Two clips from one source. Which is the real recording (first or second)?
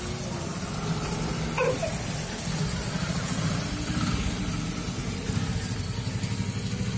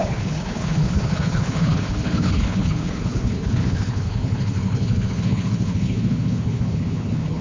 first